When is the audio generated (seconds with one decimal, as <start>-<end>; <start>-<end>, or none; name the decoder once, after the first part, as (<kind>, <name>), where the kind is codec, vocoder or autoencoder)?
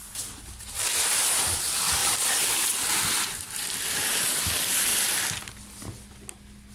2.0-4.5 (vocoder, BigVGAN v2)